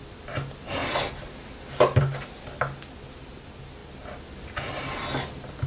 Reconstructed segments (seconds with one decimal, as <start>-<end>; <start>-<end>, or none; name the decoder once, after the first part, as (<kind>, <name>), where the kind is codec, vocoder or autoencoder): none